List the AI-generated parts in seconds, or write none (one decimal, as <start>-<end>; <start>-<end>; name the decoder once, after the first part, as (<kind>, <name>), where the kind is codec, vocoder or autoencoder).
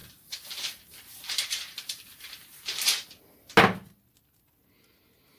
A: 0.0-3.2 (vocoder, BigVGAN v2)